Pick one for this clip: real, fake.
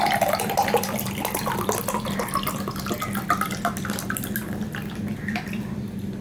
real